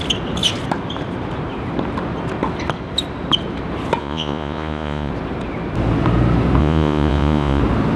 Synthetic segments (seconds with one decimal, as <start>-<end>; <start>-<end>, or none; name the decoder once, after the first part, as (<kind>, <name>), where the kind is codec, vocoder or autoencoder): 4.0-5.1 (vocoder, Vocos); 6.6-7.6